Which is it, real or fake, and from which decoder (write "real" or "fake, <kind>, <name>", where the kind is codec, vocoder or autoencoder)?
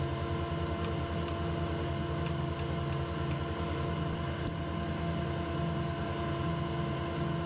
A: real